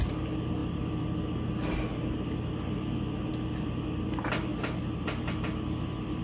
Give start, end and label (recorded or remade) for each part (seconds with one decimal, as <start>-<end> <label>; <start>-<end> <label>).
0.0-6.2 recorded